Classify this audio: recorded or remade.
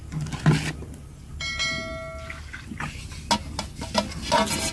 recorded